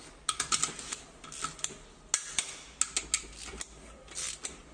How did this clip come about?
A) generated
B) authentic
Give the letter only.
B